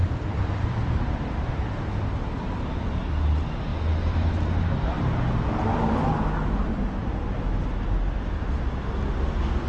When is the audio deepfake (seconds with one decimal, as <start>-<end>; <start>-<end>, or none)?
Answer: 0.0-1.7; 6.7-8.4